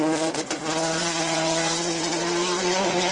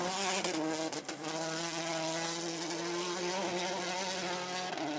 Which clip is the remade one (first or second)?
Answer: first